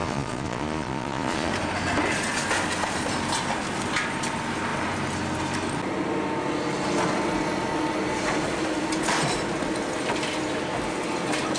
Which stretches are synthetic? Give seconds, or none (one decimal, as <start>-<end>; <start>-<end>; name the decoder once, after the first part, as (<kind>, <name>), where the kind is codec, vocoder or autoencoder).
0.0-1.5 (vocoder, Vocos)